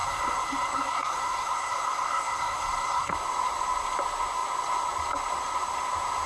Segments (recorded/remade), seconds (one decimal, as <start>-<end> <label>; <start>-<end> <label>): 0.0-3.1 remade; 3.1-6.3 recorded